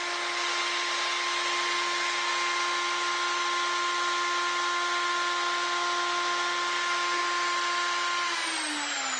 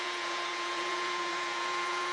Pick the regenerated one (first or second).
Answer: second